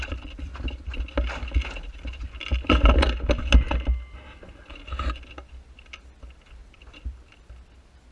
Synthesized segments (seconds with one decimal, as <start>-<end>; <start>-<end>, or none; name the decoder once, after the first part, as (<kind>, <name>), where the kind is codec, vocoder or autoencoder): 6.6-7.3 (vocoder, BigVGAN v2)